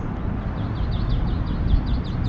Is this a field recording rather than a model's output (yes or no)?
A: yes